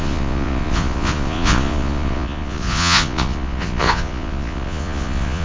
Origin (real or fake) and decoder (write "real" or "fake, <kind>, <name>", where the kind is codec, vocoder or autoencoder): fake, vocoder, Vocos